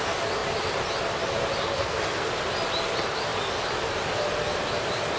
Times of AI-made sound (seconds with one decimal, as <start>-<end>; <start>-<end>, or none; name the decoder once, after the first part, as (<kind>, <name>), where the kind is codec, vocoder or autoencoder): 1.7-2.3 (codec, SNAC)